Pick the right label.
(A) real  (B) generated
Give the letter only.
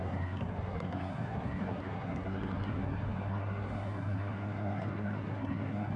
B